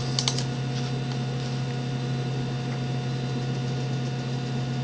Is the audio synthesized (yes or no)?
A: no